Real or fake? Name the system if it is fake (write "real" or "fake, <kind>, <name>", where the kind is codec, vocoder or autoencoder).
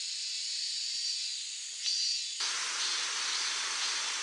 real